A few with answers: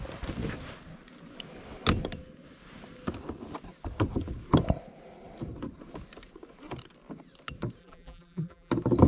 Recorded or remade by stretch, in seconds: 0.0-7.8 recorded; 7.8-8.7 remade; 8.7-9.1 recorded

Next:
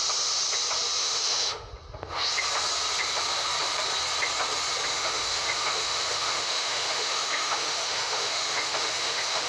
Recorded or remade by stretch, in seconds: 0.0-1.0 recorded; 1.0-1.7 remade; 1.7-4.9 recorded; 4.9-9.5 remade

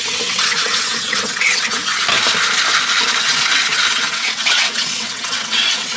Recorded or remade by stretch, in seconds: 0.0-1.8 remade; 1.8-3.2 recorded; 3.2-6.0 remade